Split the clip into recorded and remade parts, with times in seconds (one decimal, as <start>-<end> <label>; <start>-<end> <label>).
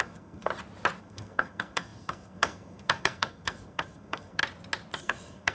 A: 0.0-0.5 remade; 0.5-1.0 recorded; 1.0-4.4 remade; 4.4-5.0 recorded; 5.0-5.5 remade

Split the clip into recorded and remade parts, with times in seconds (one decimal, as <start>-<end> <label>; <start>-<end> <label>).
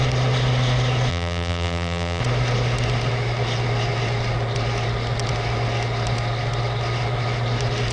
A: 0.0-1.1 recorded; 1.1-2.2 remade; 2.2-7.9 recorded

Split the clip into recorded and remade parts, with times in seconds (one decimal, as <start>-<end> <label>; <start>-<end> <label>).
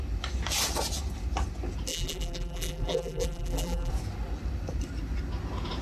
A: 0.0-1.9 recorded; 1.9-3.9 remade; 3.9-5.8 recorded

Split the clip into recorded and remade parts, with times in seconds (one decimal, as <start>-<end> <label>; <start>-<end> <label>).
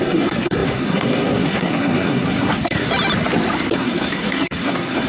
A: 0.0-2.9 remade; 2.9-3.7 recorded; 3.7-5.1 remade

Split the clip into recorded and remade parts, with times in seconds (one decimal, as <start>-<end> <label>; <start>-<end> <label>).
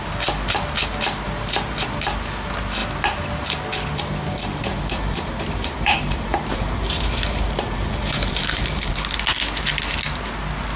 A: 0.0-5.1 recorded; 5.1-8.9 remade; 8.9-10.8 recorded